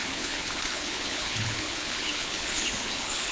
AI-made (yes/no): yes